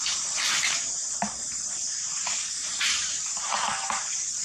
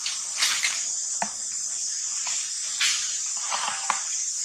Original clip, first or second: second